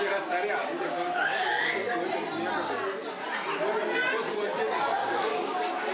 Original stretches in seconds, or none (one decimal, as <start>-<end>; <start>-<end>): 0.0-0.6; 1.7-5.0